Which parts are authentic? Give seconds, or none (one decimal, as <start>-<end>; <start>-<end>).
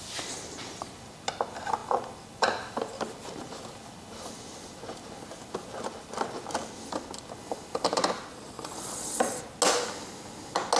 0.0-8.3; 9.4-10.8